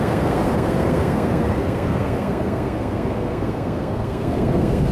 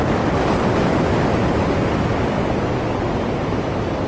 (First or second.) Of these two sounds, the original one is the second